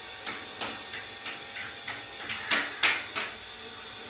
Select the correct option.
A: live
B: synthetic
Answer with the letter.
A